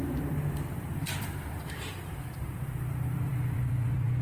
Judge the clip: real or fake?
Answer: fake